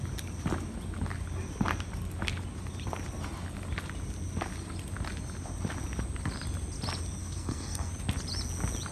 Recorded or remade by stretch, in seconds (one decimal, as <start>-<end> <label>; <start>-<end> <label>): 0.0-7.2 recorded; 7.2-7.9 remade; 7.9-8.9 recorded